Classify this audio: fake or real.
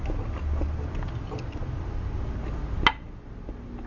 real